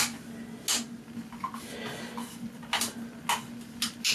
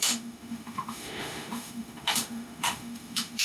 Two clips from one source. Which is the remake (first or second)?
second